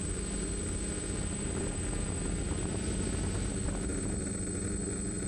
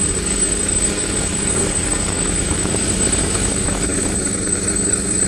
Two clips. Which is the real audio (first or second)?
first